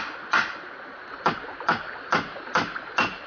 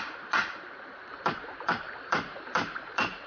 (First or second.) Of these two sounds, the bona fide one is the first